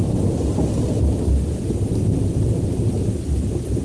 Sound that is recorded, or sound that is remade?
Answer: recorded